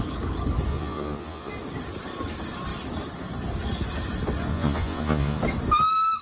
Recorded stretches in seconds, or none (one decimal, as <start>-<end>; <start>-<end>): 0.0-0.7; 1.5-4.5; 5.4-6.2